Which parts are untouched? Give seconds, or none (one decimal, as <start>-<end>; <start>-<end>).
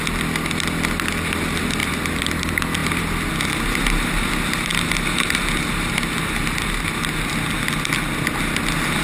0.0-1.8; 2.4-2.8; 3.3-9.0